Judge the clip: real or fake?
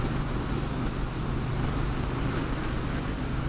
real